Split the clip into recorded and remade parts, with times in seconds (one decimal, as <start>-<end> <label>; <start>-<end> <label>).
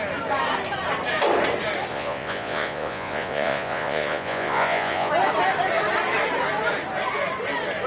0.0-1.9 recorded; 1.9-5.1 remade; 5.1-7.9 recorded